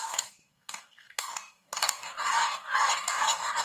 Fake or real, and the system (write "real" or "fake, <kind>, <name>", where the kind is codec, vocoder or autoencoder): fake, codec, DAC